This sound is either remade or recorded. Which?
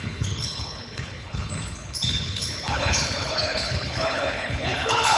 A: remade